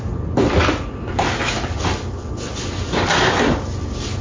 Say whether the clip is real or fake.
real